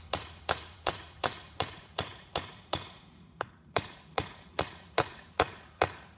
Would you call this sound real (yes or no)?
no